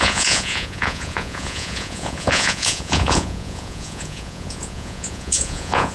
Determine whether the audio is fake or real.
fake